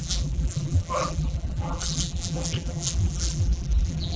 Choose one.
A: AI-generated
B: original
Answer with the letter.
A